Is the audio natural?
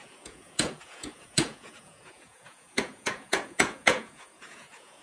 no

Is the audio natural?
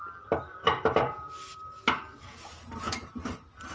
yes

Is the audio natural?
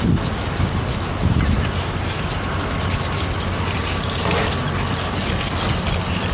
yes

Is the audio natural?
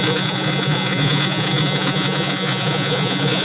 no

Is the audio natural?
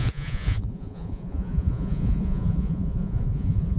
no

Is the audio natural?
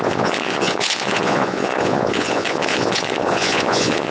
no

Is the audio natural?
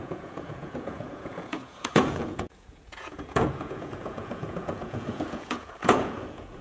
no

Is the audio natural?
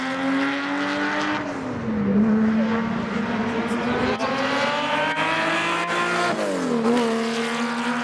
yes